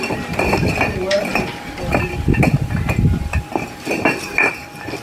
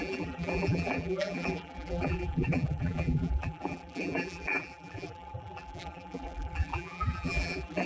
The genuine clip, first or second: first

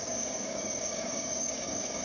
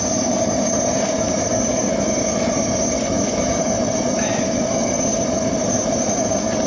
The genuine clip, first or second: second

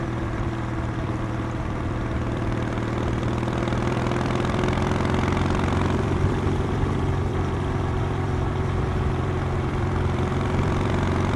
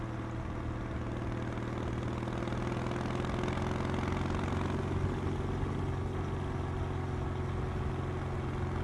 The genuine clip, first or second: second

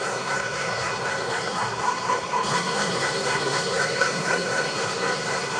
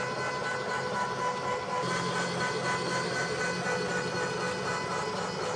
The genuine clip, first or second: second